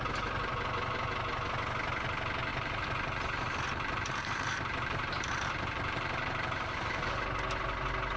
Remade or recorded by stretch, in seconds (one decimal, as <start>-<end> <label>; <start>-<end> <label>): 0.0-2.5 recorded; 2.5-7.1 remade; 7.1-8.2 recorded